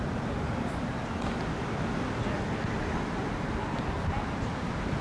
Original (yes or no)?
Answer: yes